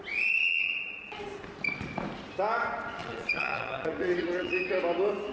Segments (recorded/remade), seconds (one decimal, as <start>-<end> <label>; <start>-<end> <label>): 0.0-0.4 recorded; 0.4-1.2 remade; 1.2-3.0 recorded; 3.0-4.6 remade; 4.6-5.3 recorded